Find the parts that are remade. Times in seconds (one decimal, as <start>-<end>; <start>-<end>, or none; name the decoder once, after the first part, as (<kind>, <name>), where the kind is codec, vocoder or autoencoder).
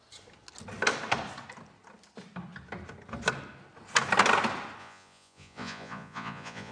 4.8-6.7 (vocoder, Vocos)